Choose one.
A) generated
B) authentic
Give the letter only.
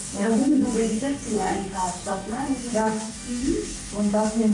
A